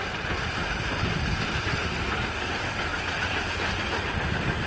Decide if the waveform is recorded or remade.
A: recorded